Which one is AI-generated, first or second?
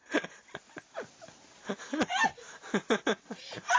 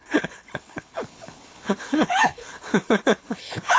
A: second